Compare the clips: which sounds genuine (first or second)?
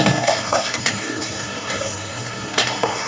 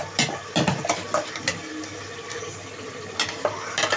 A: second